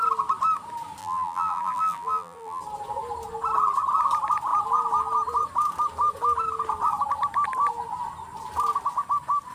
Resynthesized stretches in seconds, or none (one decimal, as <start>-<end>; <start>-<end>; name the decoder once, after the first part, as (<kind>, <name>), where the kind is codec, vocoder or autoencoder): 1.0-2.6 (vocoder, BigVGAN v2)